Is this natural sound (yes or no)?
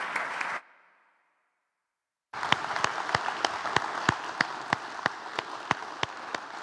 yes